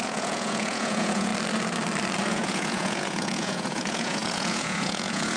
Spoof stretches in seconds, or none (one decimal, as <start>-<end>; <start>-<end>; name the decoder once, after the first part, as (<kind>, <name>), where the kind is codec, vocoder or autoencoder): 0.0-1.3 (vocoder, Vocos); 2.3-5.4